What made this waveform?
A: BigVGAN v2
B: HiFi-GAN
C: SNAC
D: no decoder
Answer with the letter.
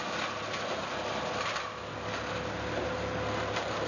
D